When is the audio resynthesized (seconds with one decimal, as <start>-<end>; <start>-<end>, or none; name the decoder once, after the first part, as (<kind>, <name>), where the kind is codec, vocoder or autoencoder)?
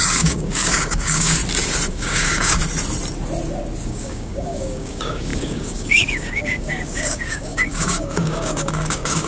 0.0-1.4 (codec, DAC); 1.9-2.6; 3.8-9.3